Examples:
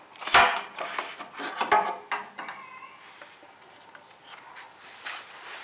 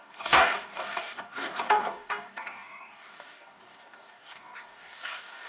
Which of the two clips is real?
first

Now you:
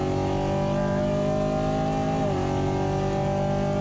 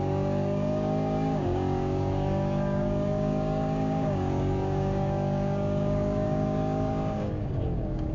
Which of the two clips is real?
first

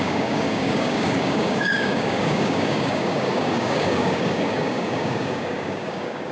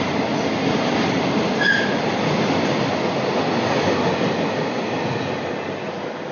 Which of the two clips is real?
second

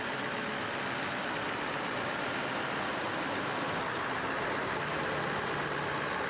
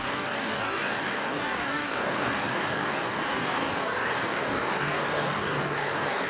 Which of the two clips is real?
first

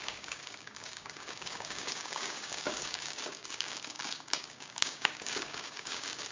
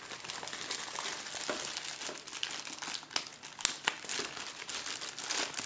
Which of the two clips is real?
second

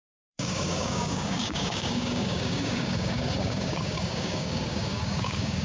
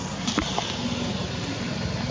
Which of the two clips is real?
second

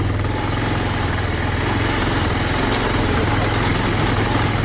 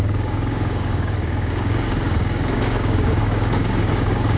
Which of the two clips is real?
first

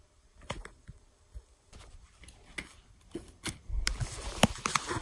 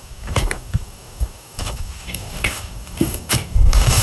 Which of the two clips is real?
first